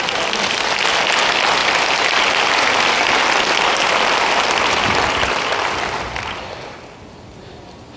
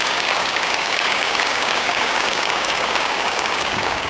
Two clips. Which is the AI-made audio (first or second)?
second